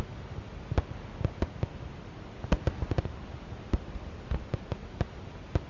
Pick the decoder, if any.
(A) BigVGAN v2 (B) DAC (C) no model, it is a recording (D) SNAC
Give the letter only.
C